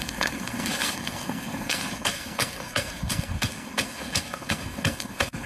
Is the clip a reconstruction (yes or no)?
yes